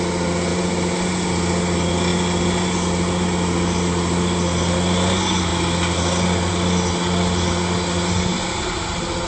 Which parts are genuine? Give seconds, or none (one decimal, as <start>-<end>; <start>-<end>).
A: 0.0-9.3